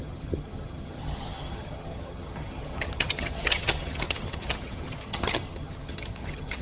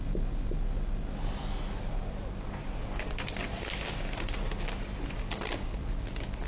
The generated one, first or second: first